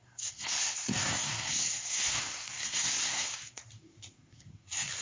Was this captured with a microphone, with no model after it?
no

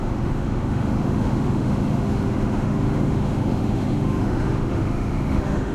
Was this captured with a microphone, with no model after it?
no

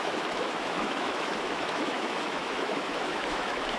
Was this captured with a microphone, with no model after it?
no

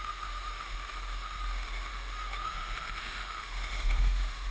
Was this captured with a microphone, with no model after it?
no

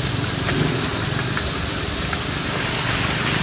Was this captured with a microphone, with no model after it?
yes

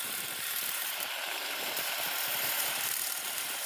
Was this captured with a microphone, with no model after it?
no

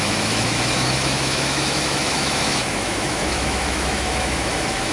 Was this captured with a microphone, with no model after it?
no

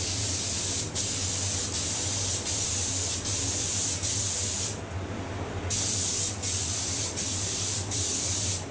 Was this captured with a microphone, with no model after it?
yes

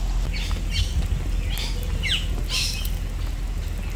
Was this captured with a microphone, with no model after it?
yes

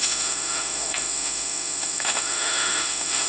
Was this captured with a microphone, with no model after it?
no